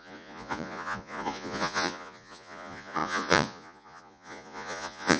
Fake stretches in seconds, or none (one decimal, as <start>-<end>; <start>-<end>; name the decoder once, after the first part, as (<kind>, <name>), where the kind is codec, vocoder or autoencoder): 0.0-5.2 (vocoder, Vocos)